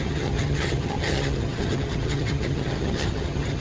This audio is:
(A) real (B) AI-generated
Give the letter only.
B